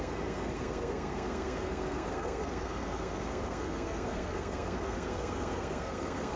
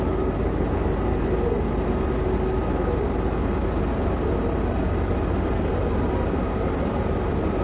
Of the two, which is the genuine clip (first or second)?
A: second